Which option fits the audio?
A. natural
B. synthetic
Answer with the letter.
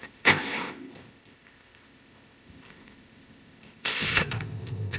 B